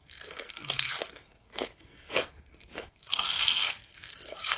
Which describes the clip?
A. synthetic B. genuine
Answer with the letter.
A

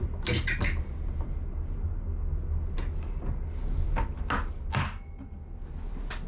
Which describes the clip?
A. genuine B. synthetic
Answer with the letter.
A